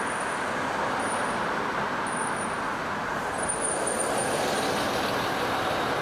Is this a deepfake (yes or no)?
no